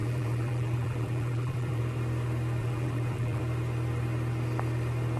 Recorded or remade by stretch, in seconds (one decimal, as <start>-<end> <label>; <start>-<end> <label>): 0.0-1.8 remade; 1.8-2.6 recorded; 2.6-3.4 remade; 3.4-5.2 recorded